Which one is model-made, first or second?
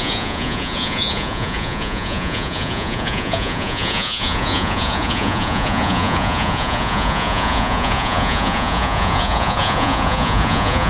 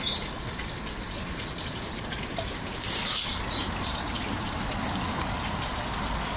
first